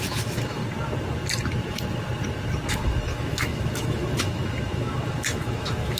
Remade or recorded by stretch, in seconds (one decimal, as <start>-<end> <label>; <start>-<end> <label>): 0.0-0.6 remade; 0.6-2.7 recorded; 2.7-6.0 remade